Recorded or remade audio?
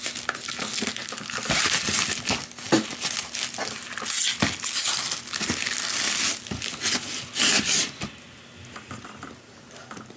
recorded